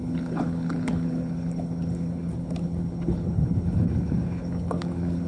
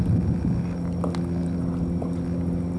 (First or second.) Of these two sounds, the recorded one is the second